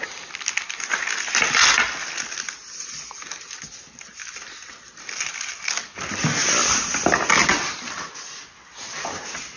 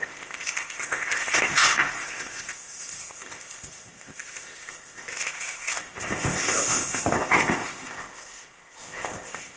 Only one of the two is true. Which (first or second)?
first